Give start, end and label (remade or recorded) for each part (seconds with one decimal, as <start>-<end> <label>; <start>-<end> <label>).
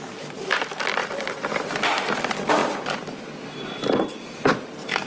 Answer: 0.0-5.1 recorded